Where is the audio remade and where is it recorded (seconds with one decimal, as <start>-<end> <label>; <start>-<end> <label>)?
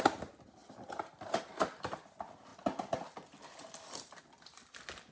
0.0-5.1 recorded